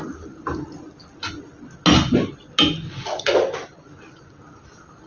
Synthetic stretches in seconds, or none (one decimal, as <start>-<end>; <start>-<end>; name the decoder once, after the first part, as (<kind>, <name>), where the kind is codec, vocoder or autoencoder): none